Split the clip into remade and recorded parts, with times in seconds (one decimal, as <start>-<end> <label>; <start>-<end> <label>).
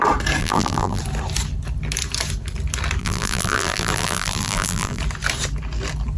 0.0-0.4 recorded; 0.4-1.0 remade; 1.0-3.0 recorded; 3.0-5.0 remade; 5.0-6.2 recorded